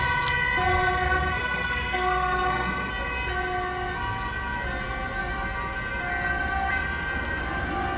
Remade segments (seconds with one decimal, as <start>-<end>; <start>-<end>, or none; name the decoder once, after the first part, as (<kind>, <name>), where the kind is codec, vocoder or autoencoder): 0.7-2.9 (codec, SNAC)